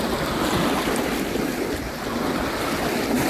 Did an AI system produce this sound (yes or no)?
no